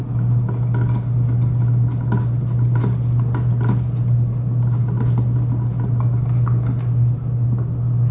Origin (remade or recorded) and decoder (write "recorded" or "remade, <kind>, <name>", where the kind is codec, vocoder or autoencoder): recorded